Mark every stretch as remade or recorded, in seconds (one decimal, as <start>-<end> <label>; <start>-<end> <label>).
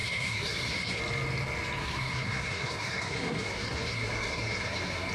0.0-1.0 remade; 1.0-1.8 recorded; 1.8-5.1 remade